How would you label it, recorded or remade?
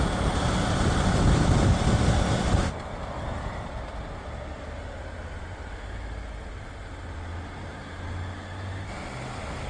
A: recorded